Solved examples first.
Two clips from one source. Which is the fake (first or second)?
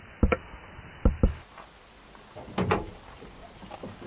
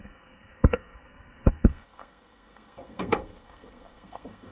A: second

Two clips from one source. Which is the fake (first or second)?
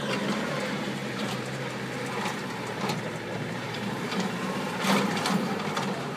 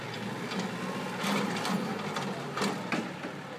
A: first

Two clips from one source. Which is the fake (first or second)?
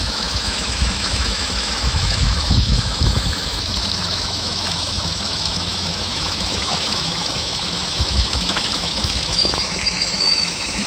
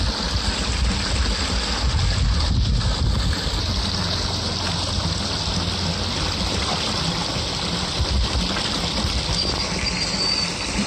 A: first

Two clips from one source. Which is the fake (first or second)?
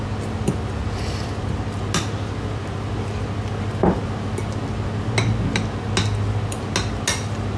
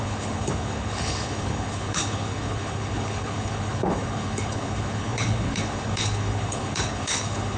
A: second